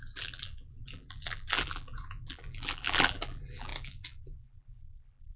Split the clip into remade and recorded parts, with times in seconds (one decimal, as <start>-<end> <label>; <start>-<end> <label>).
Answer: 0.0-5.4 remade